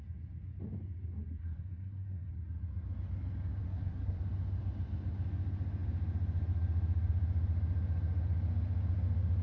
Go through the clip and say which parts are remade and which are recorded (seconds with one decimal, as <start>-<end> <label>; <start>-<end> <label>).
0.0-1.4 recorded; 1.4-2.3 remade; 2.3-3.6 recorded; 3.6-4.2 remade; 4.2-9.4 recorded